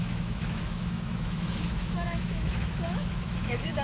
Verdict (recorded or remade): remade